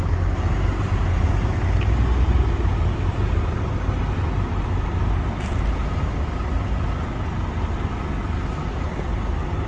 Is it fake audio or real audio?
real